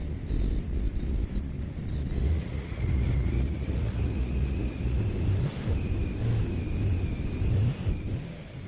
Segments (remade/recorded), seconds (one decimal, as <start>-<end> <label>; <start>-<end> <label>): 0.0-2.2 recorded; 2.2-5.0 remade; 5.0-8.7 recorded